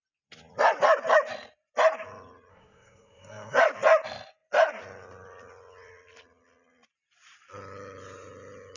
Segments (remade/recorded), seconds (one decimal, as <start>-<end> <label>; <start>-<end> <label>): 0.0-2.5 recorded; 2.5-3.6 remade; 3.6-8.8 recorded